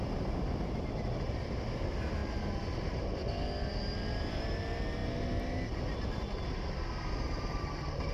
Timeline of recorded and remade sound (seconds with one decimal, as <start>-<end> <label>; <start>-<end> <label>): 0.0-8.1 recorded

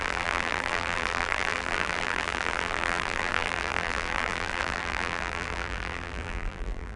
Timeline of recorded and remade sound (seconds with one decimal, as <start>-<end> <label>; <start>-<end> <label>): 0.0-7.0 remade

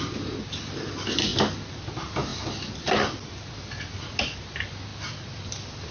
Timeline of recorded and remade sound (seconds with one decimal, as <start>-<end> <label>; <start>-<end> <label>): 0.0-5.9 recorded

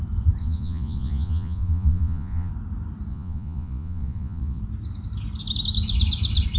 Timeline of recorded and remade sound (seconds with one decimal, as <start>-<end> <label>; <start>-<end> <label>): 0.0-0.4 recorded; 0.4-2.5 remade; 2.5-3.1 recorded; 3.1-4.6 remade; 4.6-6.6 recorded